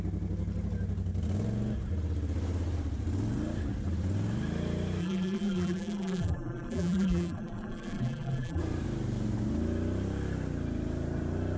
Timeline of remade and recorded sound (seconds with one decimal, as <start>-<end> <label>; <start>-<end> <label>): 0.0-5.0 recorded; 5.0-8.6 remade; 8.6-11.6 recorded